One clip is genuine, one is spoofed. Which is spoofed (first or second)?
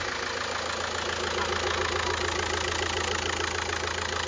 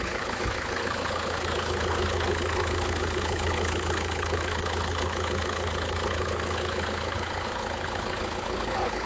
second